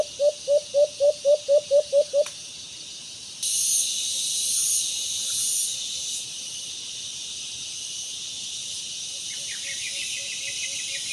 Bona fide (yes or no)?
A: yes